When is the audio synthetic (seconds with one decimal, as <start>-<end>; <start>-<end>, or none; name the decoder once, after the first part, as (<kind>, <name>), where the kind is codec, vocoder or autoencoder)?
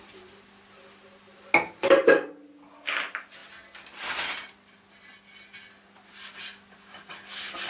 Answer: none